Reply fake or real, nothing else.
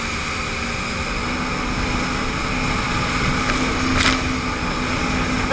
real